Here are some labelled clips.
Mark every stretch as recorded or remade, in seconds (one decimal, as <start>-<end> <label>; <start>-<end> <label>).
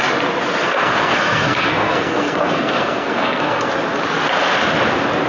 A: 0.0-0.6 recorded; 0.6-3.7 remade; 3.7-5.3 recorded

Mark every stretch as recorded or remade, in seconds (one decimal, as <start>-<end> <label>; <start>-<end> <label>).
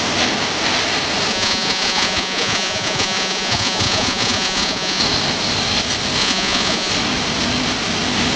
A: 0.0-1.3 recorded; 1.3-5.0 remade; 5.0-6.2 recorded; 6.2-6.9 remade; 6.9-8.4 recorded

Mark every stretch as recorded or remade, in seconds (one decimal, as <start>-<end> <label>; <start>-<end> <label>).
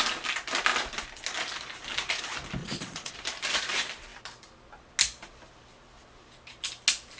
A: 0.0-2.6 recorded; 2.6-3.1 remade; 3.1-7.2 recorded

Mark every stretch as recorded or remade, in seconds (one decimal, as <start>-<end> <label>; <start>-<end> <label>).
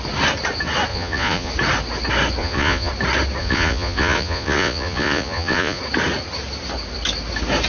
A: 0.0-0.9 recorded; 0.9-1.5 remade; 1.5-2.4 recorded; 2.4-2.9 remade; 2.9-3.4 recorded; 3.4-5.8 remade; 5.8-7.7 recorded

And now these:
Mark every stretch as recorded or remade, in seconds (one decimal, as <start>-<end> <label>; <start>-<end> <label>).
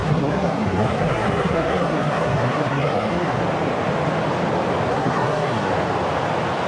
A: 0.0-3.4 remade; 3.4-4.9 recorded; 4.9-5.7 remade; 5.7-6.7 recorded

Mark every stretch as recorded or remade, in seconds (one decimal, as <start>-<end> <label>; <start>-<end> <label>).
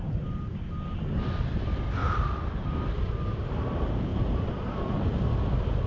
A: 0.0-4.1 recorded; 4.1-5.2 remade; 5.2-5.9 recorded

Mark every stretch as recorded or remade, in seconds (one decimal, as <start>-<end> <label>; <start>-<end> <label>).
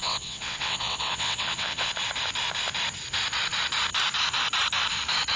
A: 0.0-1.9 remade; 1.9-5.4 recorded